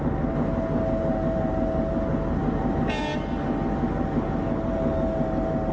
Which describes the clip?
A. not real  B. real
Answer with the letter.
B